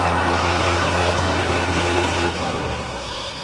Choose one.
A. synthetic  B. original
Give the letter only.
A